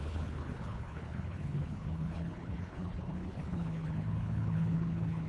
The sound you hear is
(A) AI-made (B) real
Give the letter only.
A